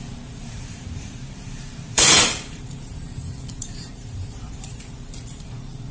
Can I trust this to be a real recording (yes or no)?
no